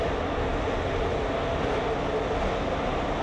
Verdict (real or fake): real